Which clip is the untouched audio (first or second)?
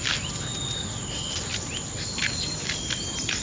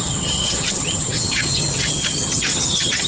first